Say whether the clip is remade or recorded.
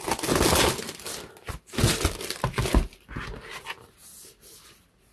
recorded